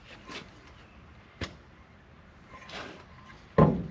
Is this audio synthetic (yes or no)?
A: no